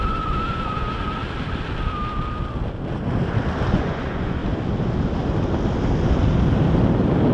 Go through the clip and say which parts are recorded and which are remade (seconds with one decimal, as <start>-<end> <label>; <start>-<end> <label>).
0.0-1.2 remade; 1.2-3.7 recorded; 3.7-4.4 remade; 4.4-7.3 recorded